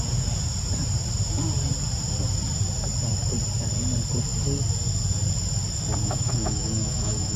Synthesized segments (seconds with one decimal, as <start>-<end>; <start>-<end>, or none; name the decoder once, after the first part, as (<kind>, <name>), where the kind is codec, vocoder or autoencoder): 6.0-7.4 (autoencoder, DAC-VAE)

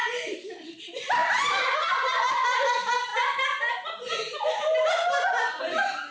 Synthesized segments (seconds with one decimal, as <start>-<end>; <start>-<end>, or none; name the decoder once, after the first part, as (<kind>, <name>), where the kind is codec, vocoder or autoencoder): none

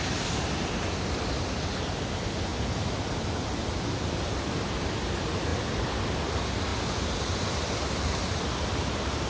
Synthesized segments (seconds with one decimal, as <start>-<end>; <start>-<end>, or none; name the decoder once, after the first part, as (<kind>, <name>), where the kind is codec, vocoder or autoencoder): 6.7-8.5 (vocoder, BigVGAN v2)